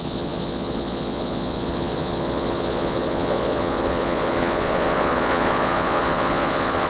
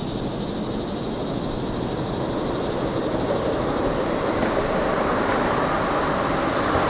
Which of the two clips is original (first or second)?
second